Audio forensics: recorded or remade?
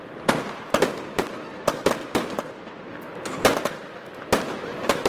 recorded